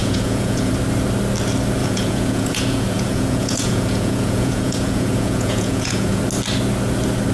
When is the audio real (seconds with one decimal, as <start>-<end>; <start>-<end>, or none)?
0.7-1.8; 6.2-7.3